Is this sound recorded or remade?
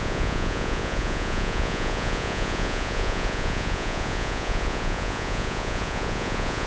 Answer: remade